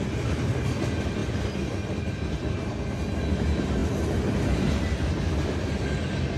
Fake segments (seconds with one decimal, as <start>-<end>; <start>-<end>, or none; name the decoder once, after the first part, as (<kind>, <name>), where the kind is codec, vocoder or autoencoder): none